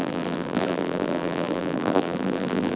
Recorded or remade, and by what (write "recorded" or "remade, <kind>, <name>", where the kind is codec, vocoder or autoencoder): remade, vocoder, BigVGAN v2